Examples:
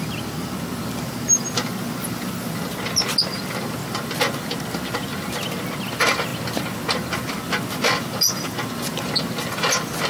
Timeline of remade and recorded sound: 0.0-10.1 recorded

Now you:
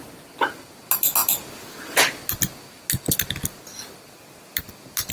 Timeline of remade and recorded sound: 0.0-5.1 recorded

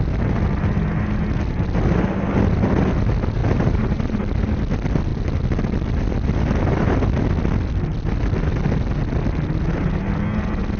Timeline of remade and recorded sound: 0.0-3.4 recorded; 3.4-4.2 remade; 4.2-10.8 recorded

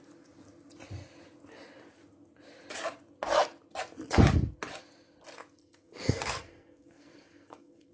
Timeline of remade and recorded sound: 0.0-5.6 recorded; 5.6-7.9 remade